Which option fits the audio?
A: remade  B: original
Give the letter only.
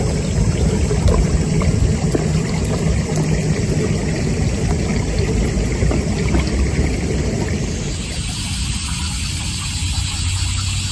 B